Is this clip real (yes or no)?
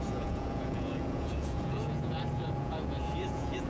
no